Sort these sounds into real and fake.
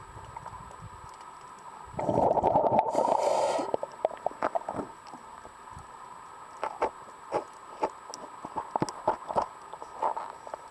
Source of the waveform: real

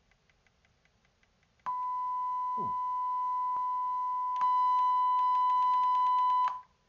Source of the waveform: real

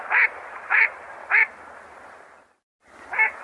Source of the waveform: real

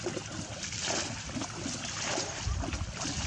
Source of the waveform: real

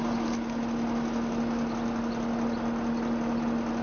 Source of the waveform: real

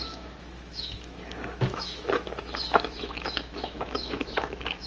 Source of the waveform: fake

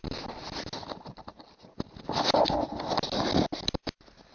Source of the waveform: real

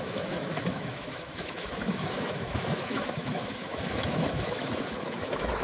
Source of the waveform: fake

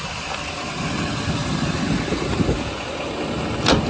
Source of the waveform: real